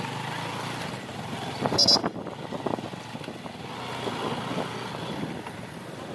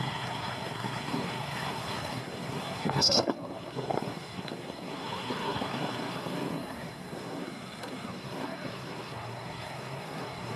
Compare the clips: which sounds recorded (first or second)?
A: first